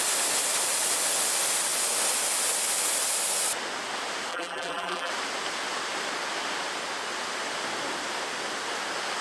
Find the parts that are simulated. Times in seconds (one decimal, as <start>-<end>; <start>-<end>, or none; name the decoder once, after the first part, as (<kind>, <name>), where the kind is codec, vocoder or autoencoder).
4.3-5.1 (vocoder, BigVGAN v2)